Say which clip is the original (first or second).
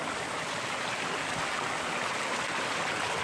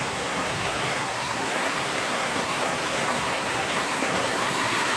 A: first